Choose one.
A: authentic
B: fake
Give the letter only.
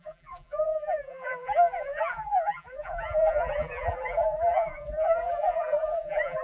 B